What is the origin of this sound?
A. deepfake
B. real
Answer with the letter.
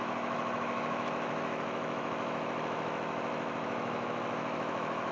A